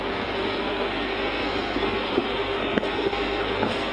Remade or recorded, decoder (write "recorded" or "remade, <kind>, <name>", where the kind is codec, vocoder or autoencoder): remade, codec, SNAC